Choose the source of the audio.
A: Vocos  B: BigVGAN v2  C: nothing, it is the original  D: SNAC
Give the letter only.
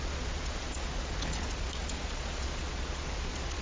A